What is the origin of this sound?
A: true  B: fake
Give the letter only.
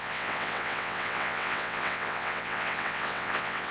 B